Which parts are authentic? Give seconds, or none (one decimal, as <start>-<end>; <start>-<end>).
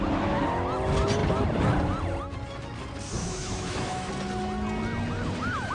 0.0-3.2; 4.1-5.7